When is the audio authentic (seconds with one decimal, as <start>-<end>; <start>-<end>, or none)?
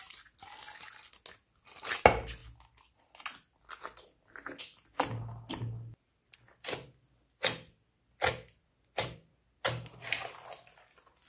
0.0-11.3